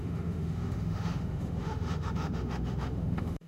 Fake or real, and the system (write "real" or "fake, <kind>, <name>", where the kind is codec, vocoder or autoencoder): fake, autoencoder, DAC-VAE